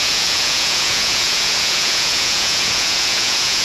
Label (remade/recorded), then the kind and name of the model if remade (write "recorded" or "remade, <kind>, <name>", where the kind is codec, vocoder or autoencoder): remade, vocoder, Vocos